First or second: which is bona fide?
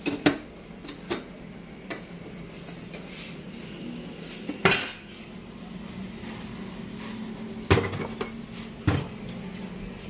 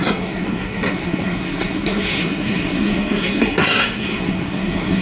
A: first